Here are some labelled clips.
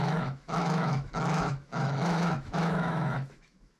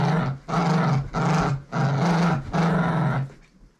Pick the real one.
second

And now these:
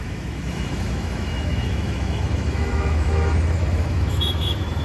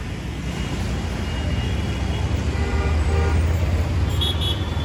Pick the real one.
second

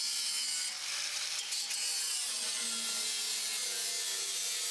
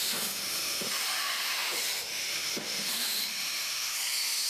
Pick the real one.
first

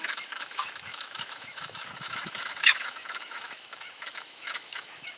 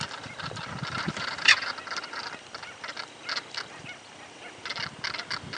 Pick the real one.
second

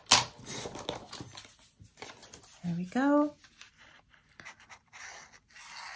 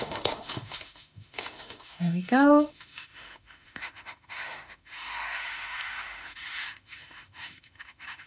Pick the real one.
first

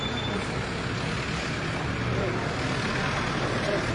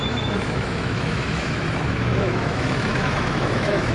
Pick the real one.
first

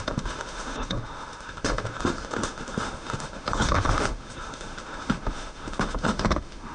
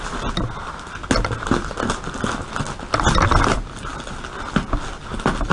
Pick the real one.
second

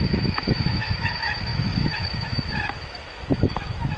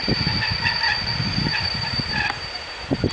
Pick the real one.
second